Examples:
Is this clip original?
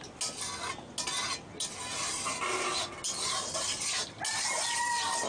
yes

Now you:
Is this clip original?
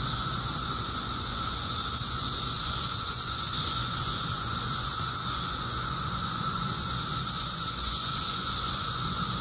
no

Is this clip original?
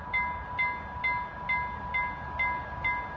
yes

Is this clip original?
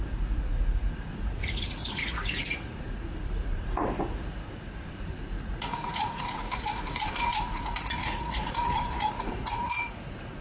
no